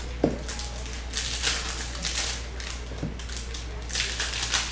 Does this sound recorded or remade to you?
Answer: recorded